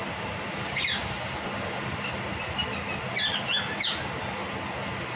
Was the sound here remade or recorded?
recorded